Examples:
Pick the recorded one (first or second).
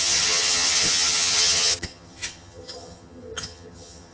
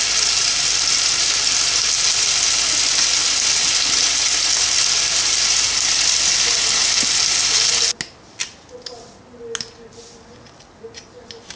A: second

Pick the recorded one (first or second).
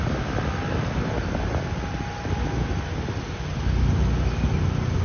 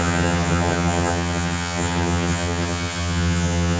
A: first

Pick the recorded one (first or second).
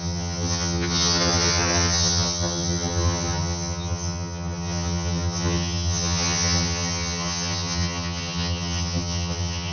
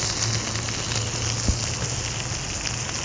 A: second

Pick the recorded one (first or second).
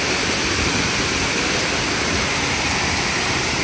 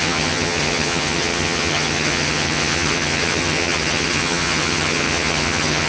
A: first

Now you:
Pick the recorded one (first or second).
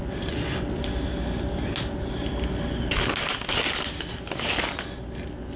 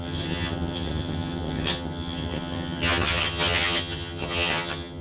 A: first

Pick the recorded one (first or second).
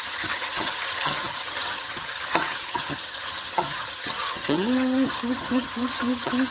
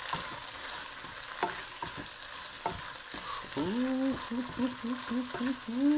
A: second